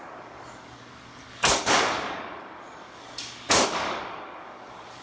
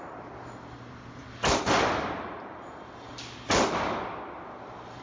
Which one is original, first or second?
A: second